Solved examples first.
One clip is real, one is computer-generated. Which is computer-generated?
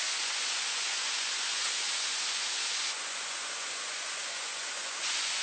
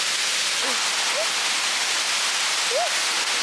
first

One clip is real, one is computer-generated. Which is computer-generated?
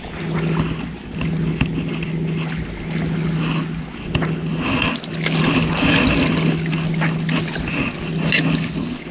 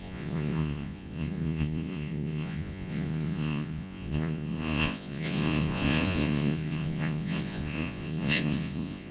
second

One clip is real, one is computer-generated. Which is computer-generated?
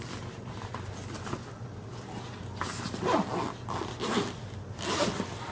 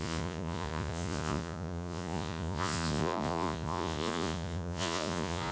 second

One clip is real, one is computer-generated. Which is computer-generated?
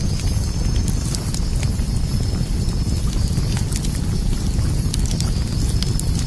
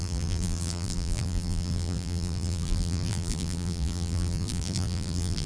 second